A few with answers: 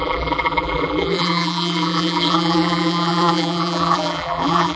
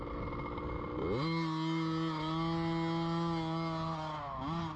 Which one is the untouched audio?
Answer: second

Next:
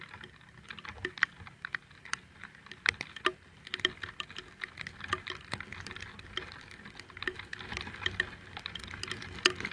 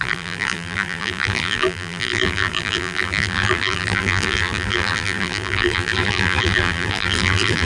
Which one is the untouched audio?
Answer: first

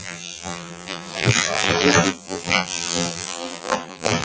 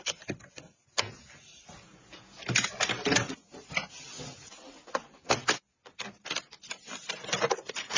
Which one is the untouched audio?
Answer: second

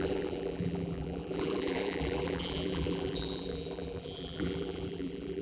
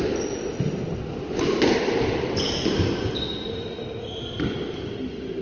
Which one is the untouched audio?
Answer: second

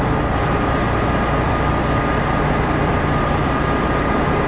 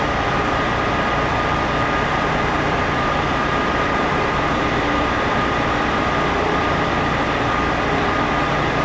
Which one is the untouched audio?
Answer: first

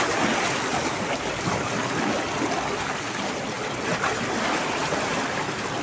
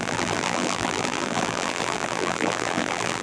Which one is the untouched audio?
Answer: first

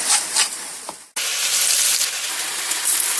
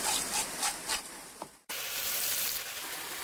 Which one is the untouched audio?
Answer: first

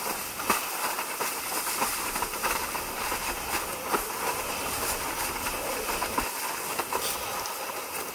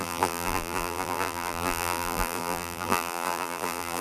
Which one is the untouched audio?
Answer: first